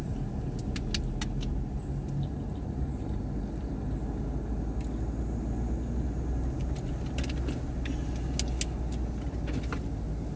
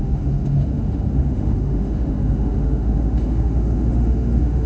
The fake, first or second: second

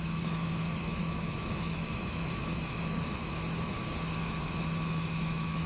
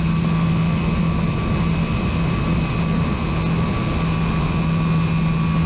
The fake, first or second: first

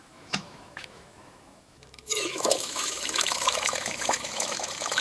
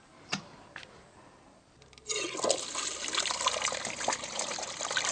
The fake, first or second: first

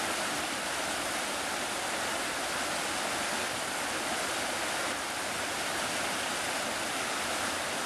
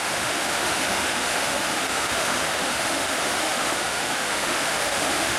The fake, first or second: second